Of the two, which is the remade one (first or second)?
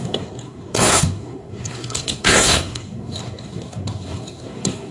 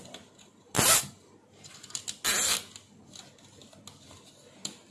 first